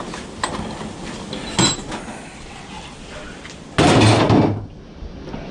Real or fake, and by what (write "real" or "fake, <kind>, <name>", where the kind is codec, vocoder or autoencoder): real